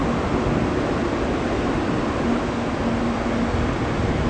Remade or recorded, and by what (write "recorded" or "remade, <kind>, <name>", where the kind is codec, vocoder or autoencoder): recorded